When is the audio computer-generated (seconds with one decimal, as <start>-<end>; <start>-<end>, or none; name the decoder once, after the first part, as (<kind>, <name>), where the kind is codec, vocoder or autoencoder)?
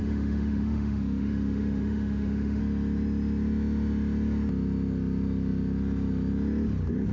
0.0-2.6 (autoencoder, DAC-VAE)